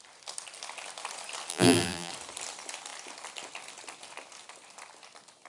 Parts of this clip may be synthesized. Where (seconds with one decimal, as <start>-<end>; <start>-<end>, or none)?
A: 1.5-2.1